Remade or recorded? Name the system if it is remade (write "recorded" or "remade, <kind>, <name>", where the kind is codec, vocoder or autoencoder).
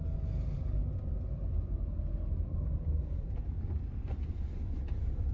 recorded